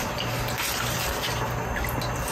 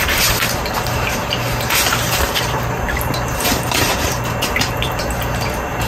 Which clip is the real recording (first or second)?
first